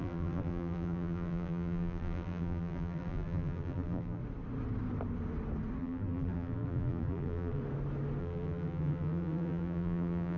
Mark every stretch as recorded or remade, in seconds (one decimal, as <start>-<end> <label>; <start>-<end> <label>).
0.0-4.2 remade; 4.2-5.8 recorded; 5.8-7.6 remade; 7.6-8.2 recorded; 8.2-10.4 remade